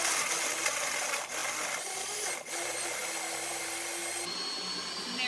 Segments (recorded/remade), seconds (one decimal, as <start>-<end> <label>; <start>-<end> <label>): 0.0-5.3 recorded